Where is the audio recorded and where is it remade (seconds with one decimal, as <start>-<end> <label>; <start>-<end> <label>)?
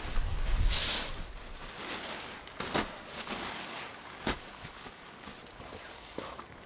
0.0-0.8 remade; 0.8-3.2 recorded; 3.2-5.3 remade; 5.3-5.9 recorded; 5.9-6.7 remade